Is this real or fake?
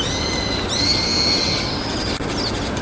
real